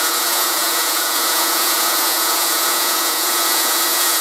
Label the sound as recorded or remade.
remade